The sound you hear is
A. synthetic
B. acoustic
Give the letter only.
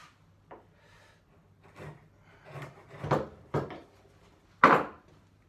B